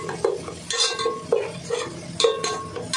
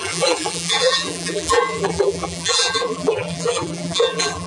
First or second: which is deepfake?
second